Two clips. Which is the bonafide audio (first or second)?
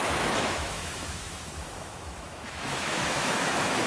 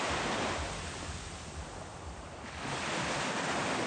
second